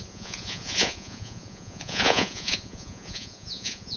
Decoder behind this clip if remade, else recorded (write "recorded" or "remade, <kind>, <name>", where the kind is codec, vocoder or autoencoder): remade, vocoder, Vocos